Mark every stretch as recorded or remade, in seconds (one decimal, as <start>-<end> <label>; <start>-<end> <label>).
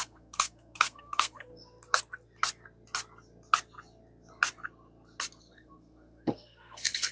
0.0-1.5 remade; 1.5-5.4 recorded; 5.4-7.1 remade